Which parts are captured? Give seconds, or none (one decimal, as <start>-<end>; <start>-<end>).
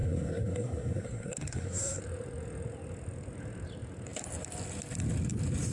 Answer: 2.0-5.7